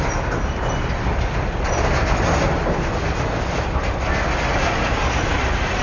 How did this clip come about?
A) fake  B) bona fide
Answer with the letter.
B